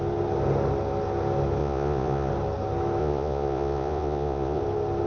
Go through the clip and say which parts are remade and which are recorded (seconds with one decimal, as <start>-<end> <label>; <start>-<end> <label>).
0.0-1.6 recorded; 1.6-2.3 remade; 2.3-3.0 recorded; 3.0-4.6 remade; 4.6-5.1 recorded